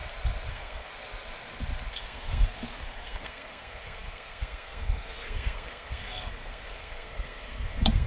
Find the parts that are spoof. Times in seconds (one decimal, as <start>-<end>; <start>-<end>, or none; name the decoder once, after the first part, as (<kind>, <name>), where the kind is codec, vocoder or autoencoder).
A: 0.5-0.9 (codec, SNAC); 1.9-8.1